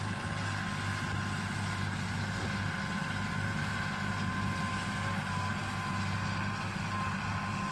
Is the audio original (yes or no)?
yes